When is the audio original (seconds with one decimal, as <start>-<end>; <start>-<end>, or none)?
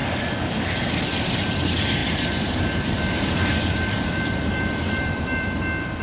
0.0-2.0; 5.6-6.0